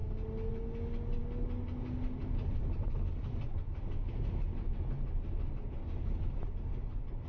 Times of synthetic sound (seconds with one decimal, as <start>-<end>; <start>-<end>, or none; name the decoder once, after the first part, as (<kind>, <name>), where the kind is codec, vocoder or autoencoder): none